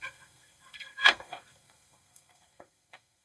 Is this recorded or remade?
remade